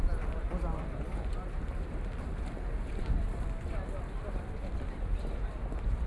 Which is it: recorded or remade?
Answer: recorded